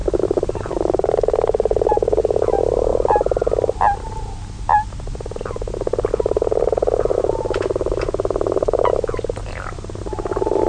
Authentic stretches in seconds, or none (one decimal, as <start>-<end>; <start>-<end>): 0.0-10.7